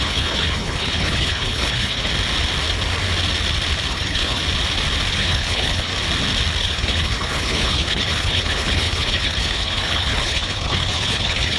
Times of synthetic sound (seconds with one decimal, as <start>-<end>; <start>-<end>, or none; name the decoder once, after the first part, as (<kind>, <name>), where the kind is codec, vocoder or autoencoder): 0.0-2.1 (codec, HILCodec); 3.9-4.4; 5.1-5.9; 6.6-11.6